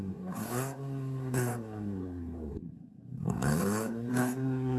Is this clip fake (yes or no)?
yes